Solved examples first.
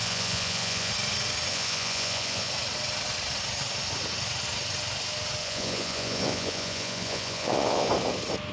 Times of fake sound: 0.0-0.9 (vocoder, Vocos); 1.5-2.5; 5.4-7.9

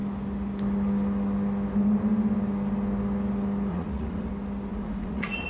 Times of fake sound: 3.7-4.3 (vocoder, Vocos); 4.7-5.5

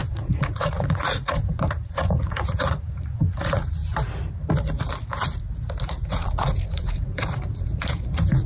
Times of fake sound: 0.0-3.8 (vocoder, Vocos); 5.9-8.5

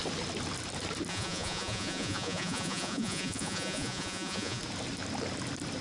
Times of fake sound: 1.1-4.6 (vocoder, Vocos)

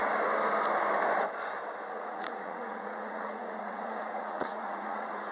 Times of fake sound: 1.9-5.3 (vocoder, Vocos)